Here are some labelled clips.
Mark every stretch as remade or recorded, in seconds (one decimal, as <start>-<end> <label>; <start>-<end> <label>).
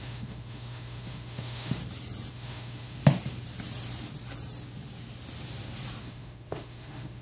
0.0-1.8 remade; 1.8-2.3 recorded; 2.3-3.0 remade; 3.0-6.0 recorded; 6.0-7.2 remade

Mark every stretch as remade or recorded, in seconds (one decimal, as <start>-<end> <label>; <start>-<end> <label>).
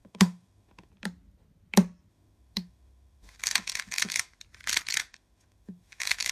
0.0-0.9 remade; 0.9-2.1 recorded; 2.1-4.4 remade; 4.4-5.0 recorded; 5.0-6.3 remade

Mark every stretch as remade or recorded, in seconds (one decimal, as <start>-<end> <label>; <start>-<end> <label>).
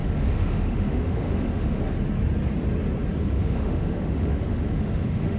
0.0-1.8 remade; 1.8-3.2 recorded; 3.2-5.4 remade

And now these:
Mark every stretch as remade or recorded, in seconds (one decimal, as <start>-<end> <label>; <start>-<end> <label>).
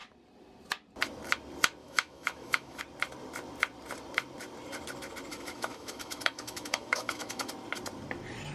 0.0-1.8 recorded; 1.8-2.8 remade; 2.8-5.3 recorded; 5.3-7.5 remade; 7.5-8.5 recorded